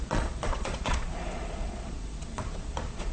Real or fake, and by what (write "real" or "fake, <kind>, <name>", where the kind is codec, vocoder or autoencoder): fake, vocoder, Vocos